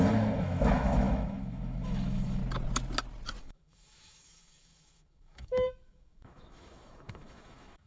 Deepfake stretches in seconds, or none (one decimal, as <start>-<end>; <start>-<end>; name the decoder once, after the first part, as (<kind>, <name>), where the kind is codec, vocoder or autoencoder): 0.0-2.4 (autoencoder, DAC-VAE); 3.4-7.9